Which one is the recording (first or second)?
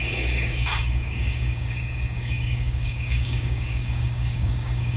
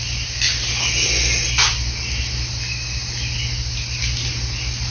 second